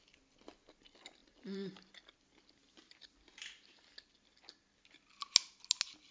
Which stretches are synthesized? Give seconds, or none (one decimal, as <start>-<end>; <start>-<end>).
1.2-1.9; 2.6-3.8